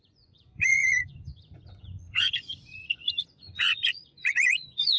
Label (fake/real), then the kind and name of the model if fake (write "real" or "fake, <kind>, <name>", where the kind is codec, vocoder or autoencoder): fake, vocoder, Vocos